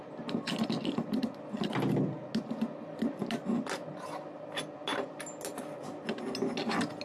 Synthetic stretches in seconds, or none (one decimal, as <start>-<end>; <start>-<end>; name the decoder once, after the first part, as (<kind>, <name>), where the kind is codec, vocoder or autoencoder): none